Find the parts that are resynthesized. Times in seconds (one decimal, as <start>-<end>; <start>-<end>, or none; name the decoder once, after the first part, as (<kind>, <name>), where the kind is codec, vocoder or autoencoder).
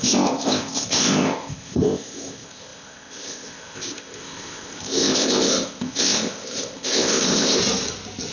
0.0-7.6 (codec, ZipCodec)